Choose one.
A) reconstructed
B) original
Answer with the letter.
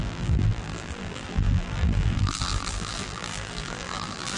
A